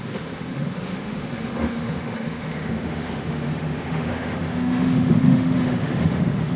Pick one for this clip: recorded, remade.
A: remade